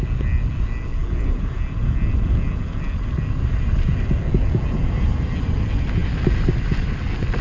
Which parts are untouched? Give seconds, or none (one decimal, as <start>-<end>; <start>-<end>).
0.0-7.4